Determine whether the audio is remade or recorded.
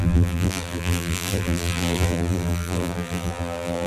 remade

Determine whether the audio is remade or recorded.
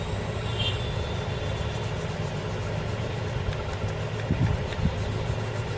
recorded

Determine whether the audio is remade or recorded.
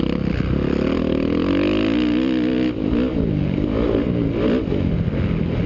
recorded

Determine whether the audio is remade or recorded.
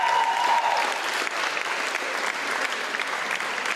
recorded